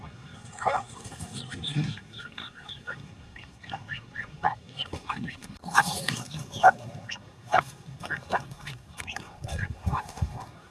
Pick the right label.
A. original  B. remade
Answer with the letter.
B